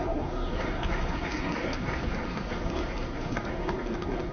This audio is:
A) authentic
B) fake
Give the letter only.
B